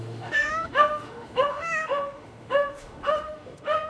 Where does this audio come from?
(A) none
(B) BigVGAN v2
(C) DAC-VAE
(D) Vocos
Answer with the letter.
C